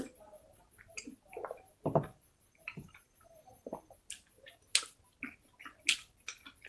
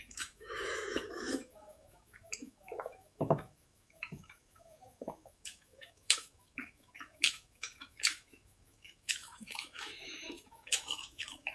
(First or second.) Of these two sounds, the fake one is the second